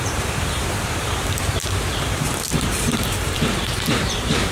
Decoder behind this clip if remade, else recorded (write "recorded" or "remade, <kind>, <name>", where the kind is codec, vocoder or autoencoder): remade, vocoder, BigVGAN v2